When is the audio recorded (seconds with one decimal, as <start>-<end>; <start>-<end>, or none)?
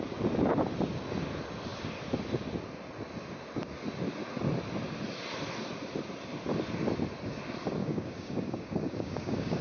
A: 0.0-7.8